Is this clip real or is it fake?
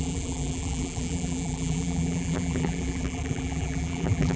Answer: fake